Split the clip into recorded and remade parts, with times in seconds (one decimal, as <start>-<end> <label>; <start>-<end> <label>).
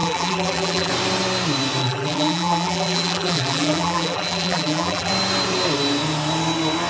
0.0-0.9 remade; 0.9-1.8 recorded; 1.8-5.1 remade; 5.1-6.9 recorded